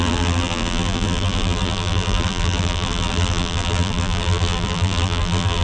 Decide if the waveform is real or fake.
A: fake